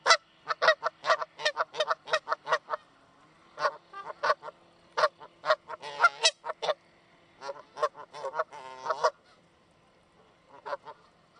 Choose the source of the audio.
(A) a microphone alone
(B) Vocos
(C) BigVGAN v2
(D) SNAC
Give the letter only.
A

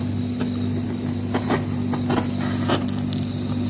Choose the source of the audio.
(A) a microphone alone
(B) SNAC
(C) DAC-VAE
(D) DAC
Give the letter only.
A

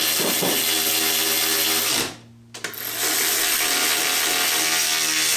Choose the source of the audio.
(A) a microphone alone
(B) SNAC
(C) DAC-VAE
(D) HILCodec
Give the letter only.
A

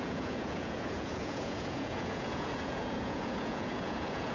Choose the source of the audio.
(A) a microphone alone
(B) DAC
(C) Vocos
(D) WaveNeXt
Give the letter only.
C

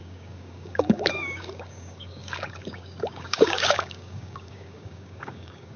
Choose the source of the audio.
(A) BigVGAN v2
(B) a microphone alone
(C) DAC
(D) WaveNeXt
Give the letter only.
C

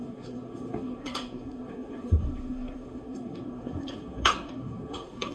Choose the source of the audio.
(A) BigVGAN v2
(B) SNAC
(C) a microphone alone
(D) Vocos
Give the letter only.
B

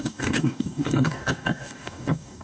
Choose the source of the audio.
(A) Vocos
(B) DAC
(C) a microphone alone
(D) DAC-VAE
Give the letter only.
B